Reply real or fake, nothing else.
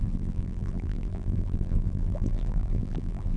fake